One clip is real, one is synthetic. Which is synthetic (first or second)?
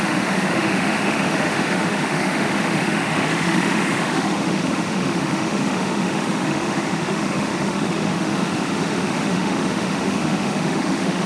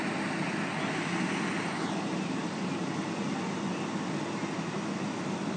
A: first